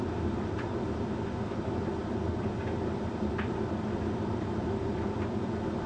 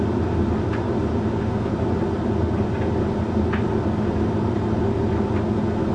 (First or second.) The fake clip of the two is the first